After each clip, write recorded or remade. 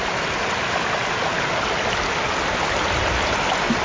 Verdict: recorded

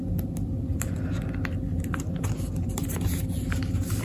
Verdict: recorded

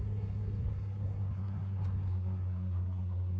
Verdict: remade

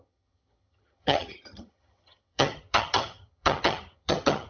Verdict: remade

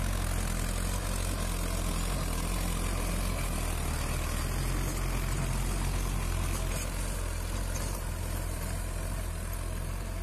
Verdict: recorded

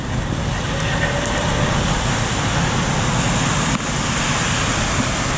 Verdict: recorded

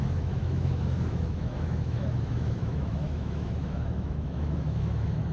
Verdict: remade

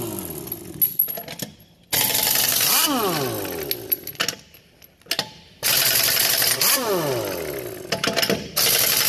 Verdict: recorded